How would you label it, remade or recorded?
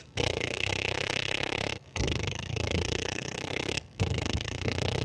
remade